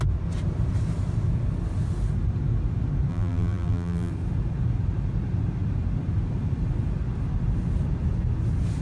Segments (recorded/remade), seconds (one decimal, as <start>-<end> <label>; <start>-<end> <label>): 0.0-3.1 recorded; 3.1-4.1 remade; 4.1-8.8 recorded